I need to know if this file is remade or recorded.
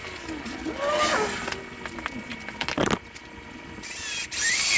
recorded